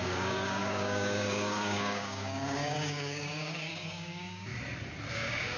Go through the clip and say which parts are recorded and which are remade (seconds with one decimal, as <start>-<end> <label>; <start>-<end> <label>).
0.0-4.5 remade; 4.5-5.1 recorded; 5.1-5.6 remade